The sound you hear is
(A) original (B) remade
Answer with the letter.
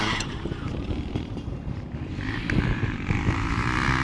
B